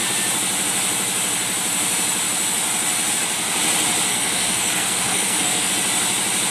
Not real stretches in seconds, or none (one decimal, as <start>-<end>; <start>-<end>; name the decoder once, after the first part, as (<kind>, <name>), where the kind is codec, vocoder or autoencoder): 4.1-5.7 (codec, SNAC)